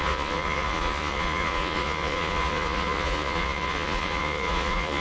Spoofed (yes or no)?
yes